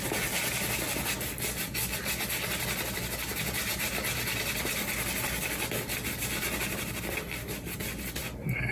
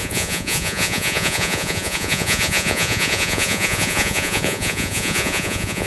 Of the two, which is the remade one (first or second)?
second